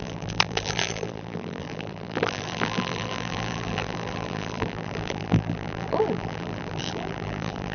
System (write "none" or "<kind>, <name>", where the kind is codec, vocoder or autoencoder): vocoder, BigVGAN v2